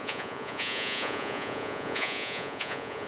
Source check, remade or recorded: remade